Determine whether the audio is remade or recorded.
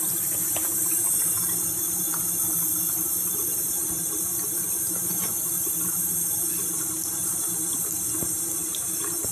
recorded